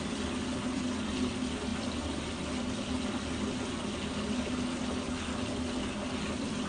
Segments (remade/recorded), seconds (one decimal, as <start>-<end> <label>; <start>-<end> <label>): 0.0-6.7 recorded